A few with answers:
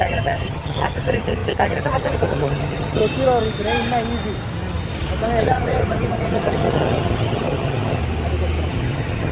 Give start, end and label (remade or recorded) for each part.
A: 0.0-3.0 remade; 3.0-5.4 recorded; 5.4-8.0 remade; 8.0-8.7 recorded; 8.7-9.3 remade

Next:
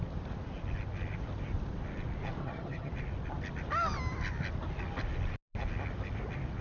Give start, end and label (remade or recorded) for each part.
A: 0.0-2.4 recorded; 2.4-2.9 remade; 2.9-6.6 recorded